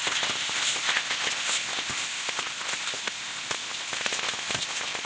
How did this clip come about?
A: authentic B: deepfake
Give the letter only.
B